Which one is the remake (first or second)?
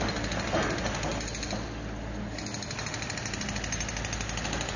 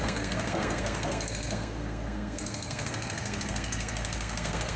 second